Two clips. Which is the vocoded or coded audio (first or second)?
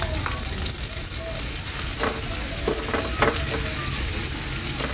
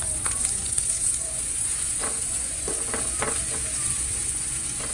second